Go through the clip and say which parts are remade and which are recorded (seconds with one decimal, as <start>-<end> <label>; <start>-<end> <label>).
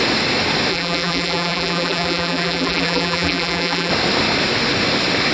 0.0-0.7 recorded; 0.7-3.9 remade; 3.9-5.3 recorded